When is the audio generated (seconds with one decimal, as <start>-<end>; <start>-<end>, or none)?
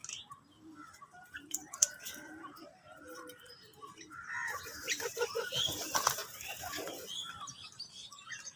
0.9-6.2; 7.8-8.6